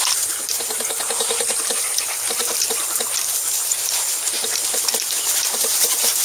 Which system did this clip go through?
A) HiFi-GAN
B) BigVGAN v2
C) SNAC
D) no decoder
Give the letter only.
B